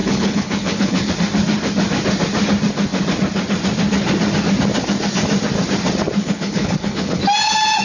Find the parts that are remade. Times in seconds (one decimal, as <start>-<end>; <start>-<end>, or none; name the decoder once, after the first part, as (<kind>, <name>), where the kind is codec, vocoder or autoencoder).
0.0-1.1 (codec, HILCodec); 6.2-7.2